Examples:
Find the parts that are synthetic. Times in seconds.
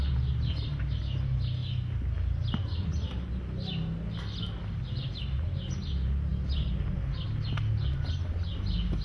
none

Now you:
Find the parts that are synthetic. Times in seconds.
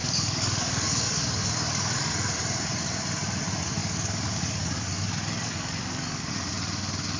0.0-2.1 (codec, DAC); 3.8-6.3